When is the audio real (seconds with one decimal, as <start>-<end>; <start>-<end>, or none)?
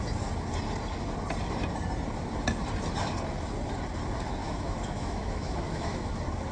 0.0-4.4; 6.1-6.5